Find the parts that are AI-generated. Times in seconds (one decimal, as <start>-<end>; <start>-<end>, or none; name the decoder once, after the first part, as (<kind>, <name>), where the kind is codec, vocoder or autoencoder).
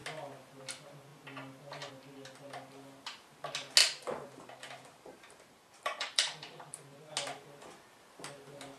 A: 3.8-7.1 (vocoder, BigVGAN v2)